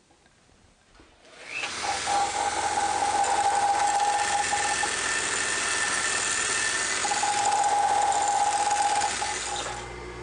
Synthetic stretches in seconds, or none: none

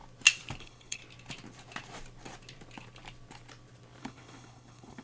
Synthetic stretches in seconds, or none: 0.6-1.0; 4.0-5.0

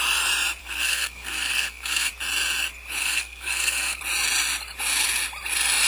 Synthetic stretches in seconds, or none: 0.6-2.1; 3.0-4.0

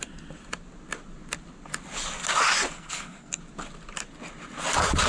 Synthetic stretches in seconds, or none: 2.7-3.4

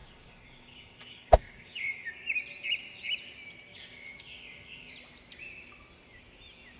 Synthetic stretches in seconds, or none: 0.0-2.1; 3.7-4.9

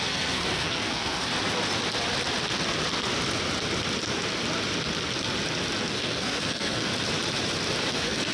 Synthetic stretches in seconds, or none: 0.0-1.3; 5.8-6.9; 7.9-8.3

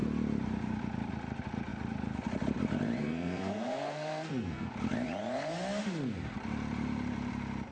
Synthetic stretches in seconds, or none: 3.0-4.7

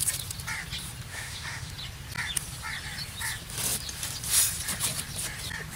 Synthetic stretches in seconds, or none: 1.1-1.7